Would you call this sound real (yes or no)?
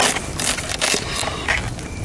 yes